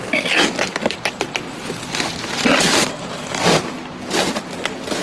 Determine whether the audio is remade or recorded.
recorded